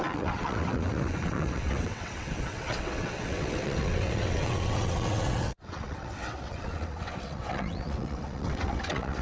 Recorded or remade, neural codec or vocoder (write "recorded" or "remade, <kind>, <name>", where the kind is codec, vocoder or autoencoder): remade, vocoder, WaveNeXt